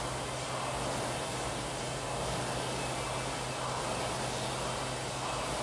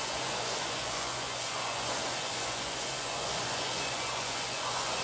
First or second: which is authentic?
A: first